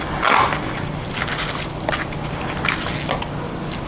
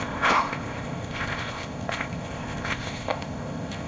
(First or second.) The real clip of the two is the first